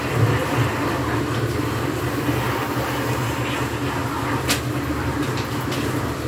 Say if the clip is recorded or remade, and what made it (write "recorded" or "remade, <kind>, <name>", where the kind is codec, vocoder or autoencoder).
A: recorded